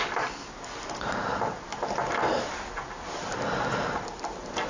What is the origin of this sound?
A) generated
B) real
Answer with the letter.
B